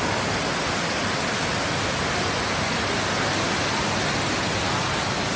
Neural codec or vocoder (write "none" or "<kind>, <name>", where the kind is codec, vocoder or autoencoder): none